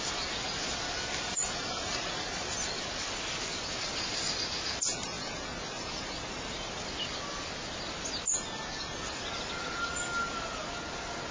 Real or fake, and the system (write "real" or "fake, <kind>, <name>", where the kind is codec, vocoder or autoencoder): real